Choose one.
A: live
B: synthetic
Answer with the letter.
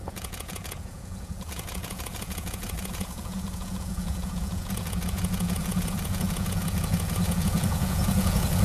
B